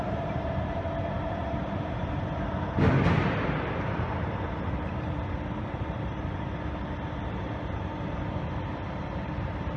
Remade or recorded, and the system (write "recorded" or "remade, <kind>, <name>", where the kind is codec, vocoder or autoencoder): remade, vocoder, BigVGAN v2